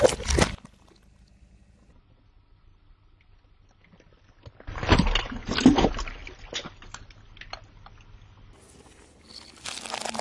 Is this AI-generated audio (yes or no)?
no